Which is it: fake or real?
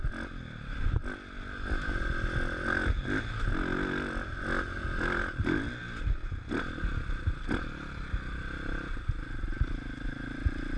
real